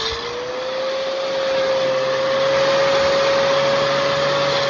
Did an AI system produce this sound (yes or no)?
no